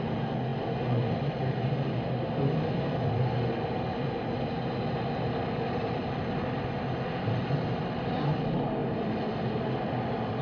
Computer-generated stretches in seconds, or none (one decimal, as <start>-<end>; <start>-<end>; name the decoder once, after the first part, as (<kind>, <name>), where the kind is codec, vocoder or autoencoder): none